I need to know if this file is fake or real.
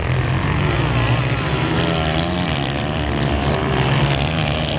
real